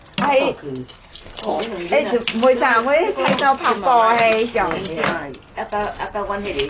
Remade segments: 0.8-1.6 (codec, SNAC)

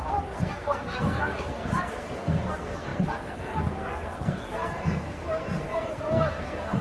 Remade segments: 0.0-6.8 (codec, SNAC)